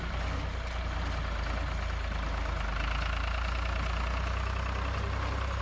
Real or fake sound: real